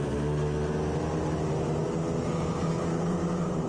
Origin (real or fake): real